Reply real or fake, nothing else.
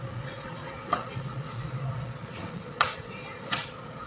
fake